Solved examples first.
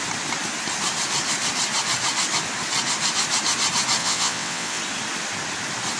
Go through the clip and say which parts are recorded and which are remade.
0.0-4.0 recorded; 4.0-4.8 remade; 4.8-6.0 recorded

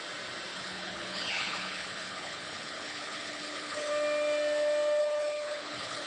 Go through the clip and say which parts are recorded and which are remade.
0.0-0.5 recorded; 0.5-3.9 remade; 3.9-5.0 recorded; 5.0-6.1 remade

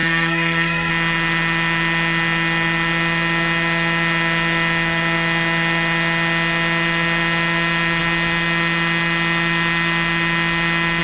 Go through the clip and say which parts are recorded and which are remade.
0.0-0.9 remade; 0.9-11.0 recorded

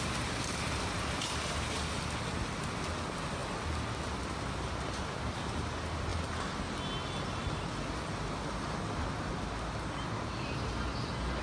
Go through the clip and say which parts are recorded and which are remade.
0.0-11.4 recorded